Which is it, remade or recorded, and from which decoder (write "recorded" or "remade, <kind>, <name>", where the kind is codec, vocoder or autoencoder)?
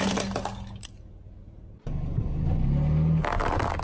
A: recorded